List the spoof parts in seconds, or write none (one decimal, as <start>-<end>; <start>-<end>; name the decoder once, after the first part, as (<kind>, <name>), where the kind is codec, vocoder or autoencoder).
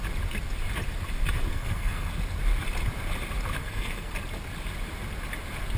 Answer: 1.5-2.1 (codec, SNAC); 3.6-4.1